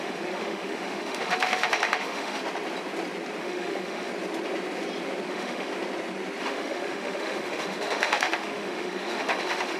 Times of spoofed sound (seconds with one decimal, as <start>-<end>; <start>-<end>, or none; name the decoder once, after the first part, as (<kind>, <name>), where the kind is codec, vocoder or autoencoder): 0.0-2.4 (autoencoder, DAC-VAE); 3.4-4.1; 5.3-5.7; 6.4-9.8